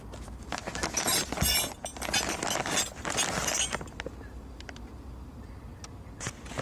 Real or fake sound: real